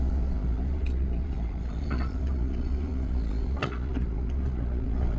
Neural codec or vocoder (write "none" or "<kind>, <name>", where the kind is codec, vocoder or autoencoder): vocoder, Vocos